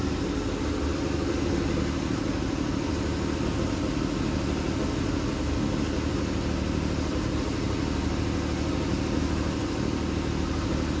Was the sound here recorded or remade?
recorded